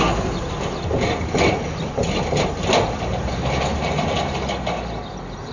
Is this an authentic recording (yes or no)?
yes